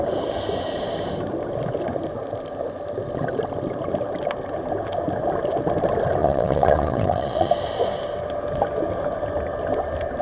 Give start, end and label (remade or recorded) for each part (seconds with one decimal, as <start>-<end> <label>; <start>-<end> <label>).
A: 0.0-6.2 recorded; 6.2-7.5 remade; 7.5-10.2 recorded